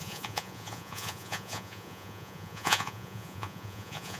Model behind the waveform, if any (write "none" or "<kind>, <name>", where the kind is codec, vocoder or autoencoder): vocoder, Vocos